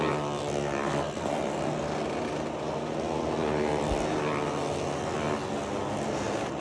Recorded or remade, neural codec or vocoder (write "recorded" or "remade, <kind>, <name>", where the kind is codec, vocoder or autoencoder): recorded